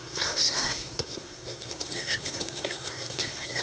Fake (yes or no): yes